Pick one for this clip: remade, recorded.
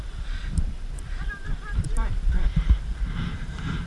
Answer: remade